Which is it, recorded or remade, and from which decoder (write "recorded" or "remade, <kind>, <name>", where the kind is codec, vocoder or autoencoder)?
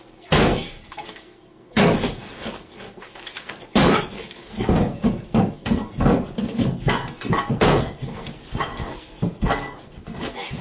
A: remade, codec, SNAC